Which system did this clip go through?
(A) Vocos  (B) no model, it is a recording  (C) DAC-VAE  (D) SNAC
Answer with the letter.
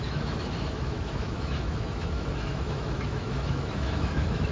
C